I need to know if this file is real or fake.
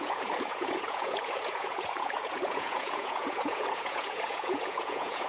fake